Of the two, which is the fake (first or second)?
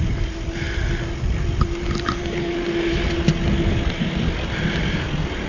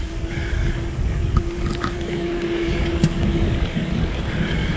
second